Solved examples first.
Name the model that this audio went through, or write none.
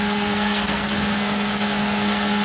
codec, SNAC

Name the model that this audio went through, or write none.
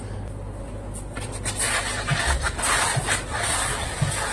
none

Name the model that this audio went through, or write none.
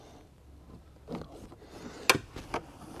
none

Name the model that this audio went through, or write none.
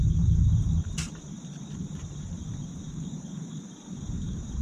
vocoder, BigVGAN v2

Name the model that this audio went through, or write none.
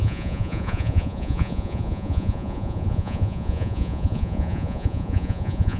vocoder, Vocos